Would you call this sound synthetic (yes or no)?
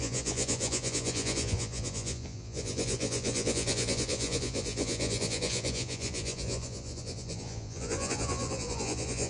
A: yes